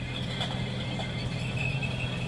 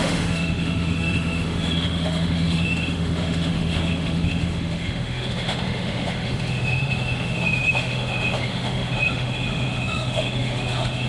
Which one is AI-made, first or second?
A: second